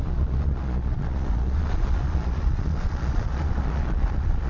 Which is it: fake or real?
fake